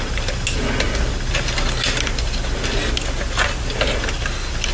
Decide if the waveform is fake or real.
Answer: real